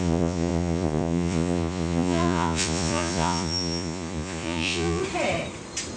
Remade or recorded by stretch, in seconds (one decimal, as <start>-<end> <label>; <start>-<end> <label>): 0.0-5.0 remade; 5.0-6.0 recorded